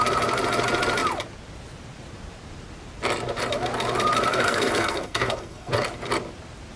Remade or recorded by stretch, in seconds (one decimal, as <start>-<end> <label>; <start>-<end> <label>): 0.0-4.3 recorded; 4.3-5.7 remade; 5.7-6.8 recorded